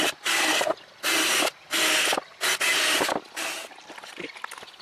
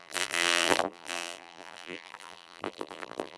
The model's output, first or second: second